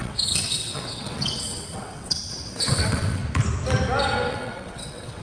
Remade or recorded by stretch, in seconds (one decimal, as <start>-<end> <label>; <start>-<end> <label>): 0.0-3.2 remade; 3.2-4.3 recorded; 4.3-5.2 remade